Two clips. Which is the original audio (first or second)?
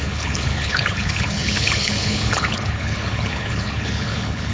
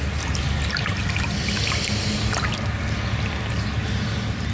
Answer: second